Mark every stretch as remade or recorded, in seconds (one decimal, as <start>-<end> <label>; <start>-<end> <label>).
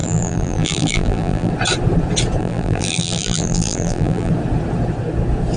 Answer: 0.0-1.5 remade; 1.5-2.4 recorded; 2.4-4.3 remade; 4.3-5.6 recorded